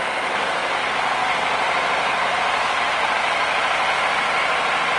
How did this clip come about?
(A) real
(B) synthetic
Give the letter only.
A